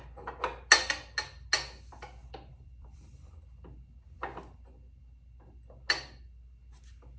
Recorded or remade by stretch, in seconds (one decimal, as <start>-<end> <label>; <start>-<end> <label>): 0.0-2.5 recorded; 2.5-3.3 remade; 3.3-7.2 recorded

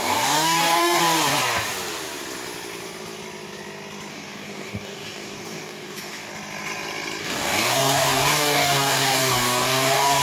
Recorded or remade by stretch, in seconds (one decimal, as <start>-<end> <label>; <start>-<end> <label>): 0.0-1.0 remade; 1.0-4.1 recorded; 4.1-6.3 remade; 6.3-7.2 recorded; 7.2-10.2 remade